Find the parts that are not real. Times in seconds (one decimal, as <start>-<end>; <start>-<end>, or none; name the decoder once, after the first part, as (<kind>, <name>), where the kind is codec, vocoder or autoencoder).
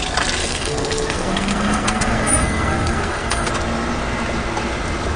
0.4-3.5 (codec, SNAC)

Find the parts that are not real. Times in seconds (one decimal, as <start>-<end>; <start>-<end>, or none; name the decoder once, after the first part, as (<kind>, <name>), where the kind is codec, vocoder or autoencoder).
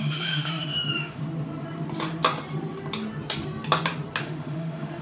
0.0-1.2 (autoencoder, DAC-VAE); 4.2-5.0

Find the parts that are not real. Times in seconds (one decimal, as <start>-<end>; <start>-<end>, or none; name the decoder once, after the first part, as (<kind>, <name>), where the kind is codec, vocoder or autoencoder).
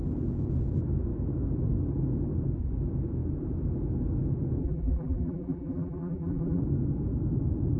4.6-6.6 (vocoder, BigVGAN v2)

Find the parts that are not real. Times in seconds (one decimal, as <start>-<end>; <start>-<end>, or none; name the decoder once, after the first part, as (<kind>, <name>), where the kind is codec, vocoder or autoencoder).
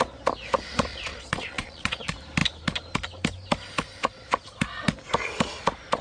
0.9-2.0 (vocoder, Vocos)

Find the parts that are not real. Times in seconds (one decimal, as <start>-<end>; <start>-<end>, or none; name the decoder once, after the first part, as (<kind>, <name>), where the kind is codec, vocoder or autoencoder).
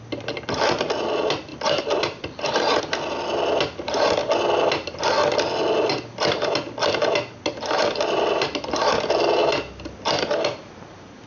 1.5-2.8 (vocoder, BigVGAN v2)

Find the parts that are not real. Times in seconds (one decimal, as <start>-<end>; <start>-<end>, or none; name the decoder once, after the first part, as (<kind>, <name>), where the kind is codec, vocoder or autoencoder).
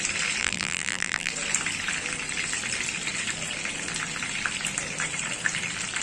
0.4-1.3 (vocoder, BigVGAN v2)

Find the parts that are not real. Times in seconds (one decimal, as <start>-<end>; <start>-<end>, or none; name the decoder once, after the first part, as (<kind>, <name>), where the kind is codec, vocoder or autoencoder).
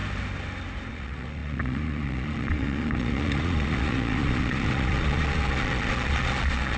0.9-6.8 (vocoder, Vocos)